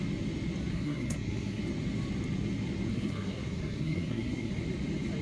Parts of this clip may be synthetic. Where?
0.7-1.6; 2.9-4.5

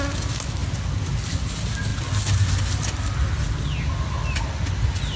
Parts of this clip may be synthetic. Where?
none

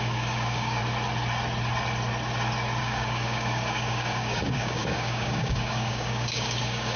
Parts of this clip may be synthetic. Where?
0.0-0.8; 2.8-7.0

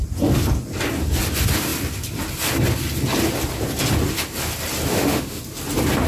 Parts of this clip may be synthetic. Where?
4.9-5.4

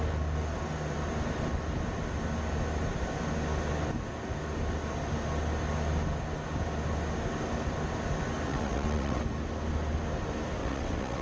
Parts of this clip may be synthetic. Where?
8.5-9.2; 10.6-11.2

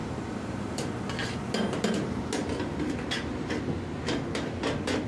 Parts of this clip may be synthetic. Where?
0.0-0.9